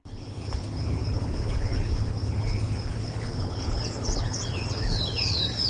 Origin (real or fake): fake